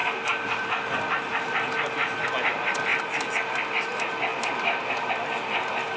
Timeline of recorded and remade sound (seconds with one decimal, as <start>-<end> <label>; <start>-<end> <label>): 0.0-6.0 recorded